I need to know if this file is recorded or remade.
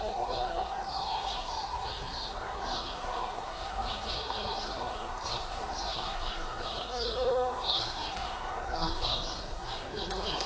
remade